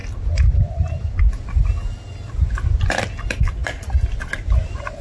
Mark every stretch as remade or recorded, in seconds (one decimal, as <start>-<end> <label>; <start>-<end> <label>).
0.0-5.0 recorded